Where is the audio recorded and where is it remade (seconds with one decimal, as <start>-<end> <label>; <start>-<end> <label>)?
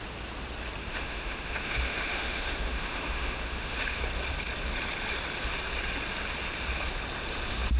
0.0-0.9 recorded; 0.9-4.0 remade; 4.0-7.8 recorded